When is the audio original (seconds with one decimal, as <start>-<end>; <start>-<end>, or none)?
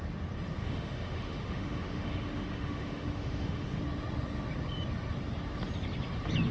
0.0-0.6; 3.8-6.5